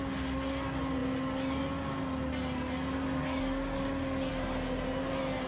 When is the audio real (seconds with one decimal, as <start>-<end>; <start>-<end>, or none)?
0.0-5.5